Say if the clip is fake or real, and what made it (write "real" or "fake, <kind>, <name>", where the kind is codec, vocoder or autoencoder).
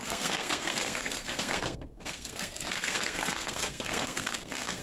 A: fake, codec, SNAC